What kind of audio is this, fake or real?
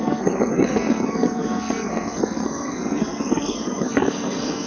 fake